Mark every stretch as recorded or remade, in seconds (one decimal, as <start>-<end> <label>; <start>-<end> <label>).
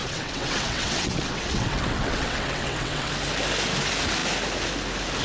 0.0-3.1 remade; 3.1-5.2 recorded